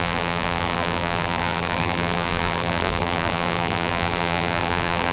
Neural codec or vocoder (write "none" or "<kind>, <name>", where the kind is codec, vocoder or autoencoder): vocoder, BigVGAN v2